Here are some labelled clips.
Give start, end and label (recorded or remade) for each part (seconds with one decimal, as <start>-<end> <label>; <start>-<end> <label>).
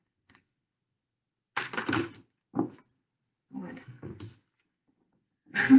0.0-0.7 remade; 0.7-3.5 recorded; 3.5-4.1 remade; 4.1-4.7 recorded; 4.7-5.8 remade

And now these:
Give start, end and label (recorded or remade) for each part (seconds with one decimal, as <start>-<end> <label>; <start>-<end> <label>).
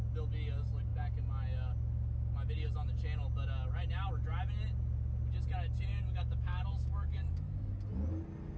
0.0-5.9 recorded; 5.9-7.7 remade; 7.7-8.6 recorded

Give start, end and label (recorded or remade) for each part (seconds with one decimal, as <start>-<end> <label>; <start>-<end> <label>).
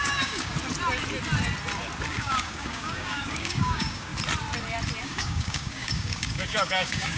0.0-0.5 remade; 0.5-2.1 recorded; 2.1-4.1 remade; 4.1-5.0 recorded; 5.0-7.2 remade